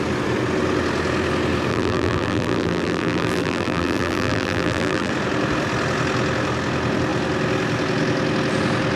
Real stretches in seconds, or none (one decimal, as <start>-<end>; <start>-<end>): 0.0-1.7; 5.1-9.0